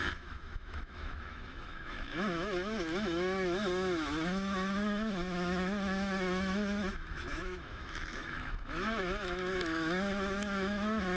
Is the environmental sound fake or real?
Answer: fake